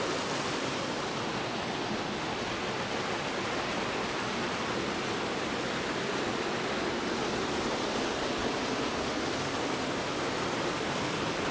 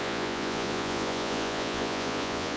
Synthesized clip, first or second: second